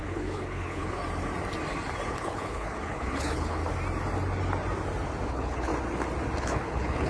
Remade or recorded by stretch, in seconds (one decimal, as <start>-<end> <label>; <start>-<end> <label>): 0.0-1.0 remade; 1.0-2.1 recorded; 2.1-3.6 remade; 3.6-5.3 recorded; 5.3-5.7 remade; 5.7-6.4 recorded; 6.4-7.1 remade